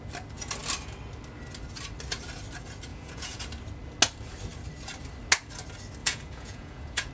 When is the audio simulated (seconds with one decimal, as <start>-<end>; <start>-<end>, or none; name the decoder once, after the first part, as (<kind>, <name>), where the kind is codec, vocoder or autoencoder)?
2.9-3.4 (vocoder, Vocos); 6.0-7.1